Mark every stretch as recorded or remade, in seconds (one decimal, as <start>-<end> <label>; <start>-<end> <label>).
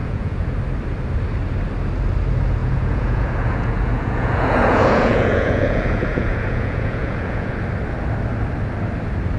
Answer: 0.0-0.6 remade; 0.6-2.6 recorded; 2.6-7.5 remade; 7.5-9.4 recorded